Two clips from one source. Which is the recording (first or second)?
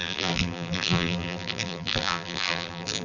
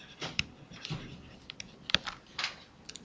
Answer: second